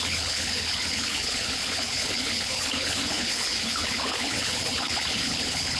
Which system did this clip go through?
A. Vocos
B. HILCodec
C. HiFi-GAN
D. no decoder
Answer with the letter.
B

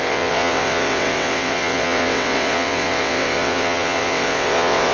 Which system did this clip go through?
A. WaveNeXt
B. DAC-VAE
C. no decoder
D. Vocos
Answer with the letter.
A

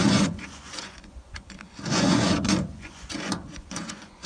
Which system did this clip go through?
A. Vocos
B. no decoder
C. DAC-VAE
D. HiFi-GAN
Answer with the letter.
A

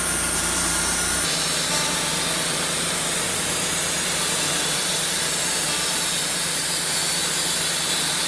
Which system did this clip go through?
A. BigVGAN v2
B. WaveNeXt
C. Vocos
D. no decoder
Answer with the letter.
A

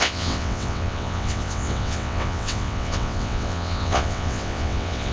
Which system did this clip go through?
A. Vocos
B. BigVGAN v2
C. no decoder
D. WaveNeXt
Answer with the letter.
D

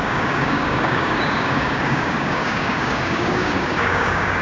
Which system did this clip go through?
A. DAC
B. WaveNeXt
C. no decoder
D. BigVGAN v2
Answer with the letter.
A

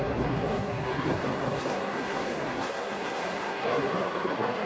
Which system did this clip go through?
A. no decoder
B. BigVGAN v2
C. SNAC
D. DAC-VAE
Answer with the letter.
C